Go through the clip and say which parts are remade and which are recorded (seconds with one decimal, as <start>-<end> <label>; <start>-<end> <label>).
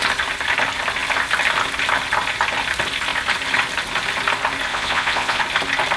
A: 0.0-4.7 recorded; 4.7-5.4 remade; 5.4-6.0 recorded